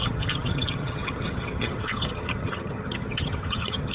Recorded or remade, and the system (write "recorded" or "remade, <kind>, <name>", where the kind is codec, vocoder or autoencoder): remade, vocoder, HiFi-GAN